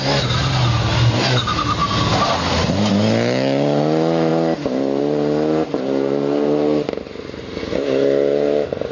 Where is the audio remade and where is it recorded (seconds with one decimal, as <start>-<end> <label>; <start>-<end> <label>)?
0.0-8.9 recorded